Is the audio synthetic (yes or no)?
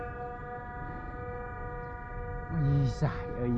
no